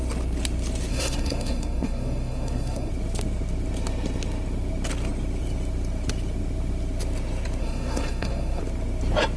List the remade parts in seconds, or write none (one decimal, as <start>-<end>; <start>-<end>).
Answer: 0.9-2.9; 7.6-8.6